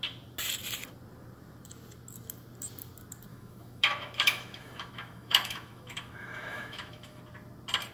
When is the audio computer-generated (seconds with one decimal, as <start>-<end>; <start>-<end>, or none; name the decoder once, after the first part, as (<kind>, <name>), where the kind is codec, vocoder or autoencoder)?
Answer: 3.3-7.2 (autoencoder, DAC-VAE)

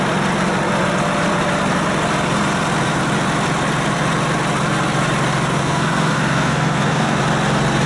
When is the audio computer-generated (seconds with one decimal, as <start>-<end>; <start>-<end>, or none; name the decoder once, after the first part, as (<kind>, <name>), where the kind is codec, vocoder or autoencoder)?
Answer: 5.6-7.2 (codec, SNAC)

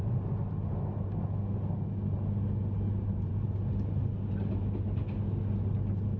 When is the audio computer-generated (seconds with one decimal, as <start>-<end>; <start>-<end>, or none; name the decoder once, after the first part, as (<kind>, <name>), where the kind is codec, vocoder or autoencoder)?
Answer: none

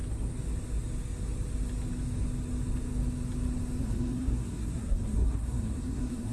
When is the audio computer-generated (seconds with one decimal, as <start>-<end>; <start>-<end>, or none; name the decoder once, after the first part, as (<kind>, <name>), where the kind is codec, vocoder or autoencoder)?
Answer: 3.8-6.3 (codec, SNAC)

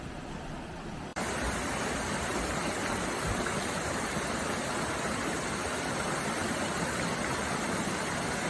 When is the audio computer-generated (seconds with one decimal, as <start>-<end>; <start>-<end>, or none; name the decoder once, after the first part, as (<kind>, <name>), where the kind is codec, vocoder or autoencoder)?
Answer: 0.0-8.5 (vocoder, BigVGAN v2)

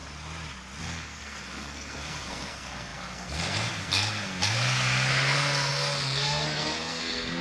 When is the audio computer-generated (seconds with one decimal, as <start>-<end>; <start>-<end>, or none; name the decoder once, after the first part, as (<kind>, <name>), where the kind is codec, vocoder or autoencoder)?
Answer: 0.8-7.4 (codec, SNAC)

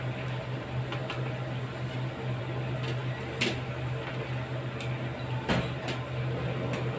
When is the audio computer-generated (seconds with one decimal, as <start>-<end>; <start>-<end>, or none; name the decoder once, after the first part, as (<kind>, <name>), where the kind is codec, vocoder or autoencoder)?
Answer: none

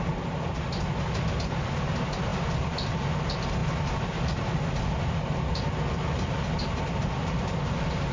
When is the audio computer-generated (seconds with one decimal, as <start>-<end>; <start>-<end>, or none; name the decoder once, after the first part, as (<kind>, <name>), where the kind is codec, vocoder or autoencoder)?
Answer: none